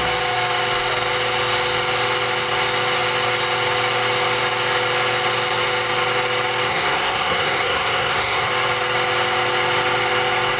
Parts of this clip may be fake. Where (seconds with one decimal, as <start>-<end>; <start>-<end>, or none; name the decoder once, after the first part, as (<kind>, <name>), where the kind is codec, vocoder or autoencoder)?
6.7-8.5 (codec, SNAC)

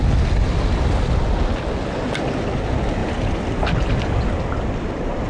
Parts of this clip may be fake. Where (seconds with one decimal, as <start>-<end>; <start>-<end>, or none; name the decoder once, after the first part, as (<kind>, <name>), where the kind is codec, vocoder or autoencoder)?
none

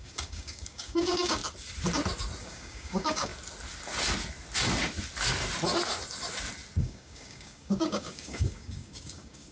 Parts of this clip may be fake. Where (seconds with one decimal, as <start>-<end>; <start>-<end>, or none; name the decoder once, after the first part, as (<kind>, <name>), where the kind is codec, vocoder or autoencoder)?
0.0-1.4 (codec, DAC); 2.4-3.3; 6.8-9.5

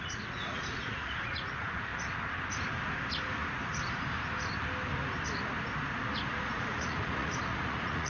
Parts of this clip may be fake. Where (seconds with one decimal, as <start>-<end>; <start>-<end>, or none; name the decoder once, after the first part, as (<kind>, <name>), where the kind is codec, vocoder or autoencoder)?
0.0-1.9 (vocoder, Vocos); 6.3-8.1

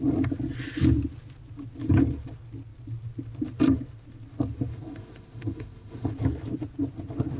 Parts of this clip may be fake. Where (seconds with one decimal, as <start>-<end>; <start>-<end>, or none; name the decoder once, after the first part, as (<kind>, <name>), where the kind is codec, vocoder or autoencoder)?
4.7-6.1 (autoencoder, DAC-VAE)

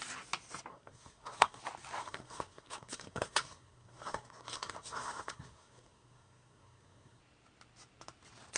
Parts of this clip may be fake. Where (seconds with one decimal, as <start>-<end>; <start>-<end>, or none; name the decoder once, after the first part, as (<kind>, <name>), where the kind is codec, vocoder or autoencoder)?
0.7-1.6 (codec, SNAC); 2.0-7.2